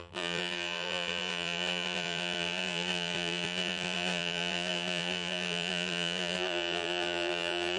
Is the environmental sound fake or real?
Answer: fake